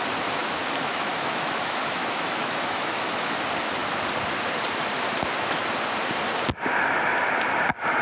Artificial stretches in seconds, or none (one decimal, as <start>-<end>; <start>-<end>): 0.4-3.3